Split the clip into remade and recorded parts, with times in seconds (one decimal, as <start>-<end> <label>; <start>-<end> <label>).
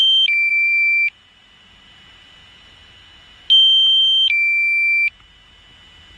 0.0-0.5 recorded; 0.5-3.5 remade; 3.5-6.2 recorded